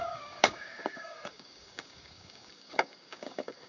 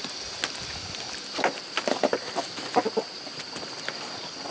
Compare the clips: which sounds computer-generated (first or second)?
first